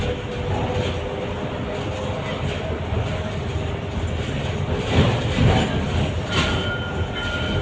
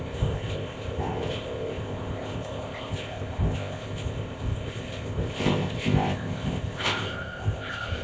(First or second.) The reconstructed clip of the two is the second